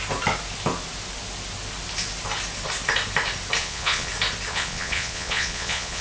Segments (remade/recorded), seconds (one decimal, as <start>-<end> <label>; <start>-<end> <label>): 0.0-3.6 recorded; 3.6-4.1 remade; 4.1-4.5 recorded; 4.5-6.0 remade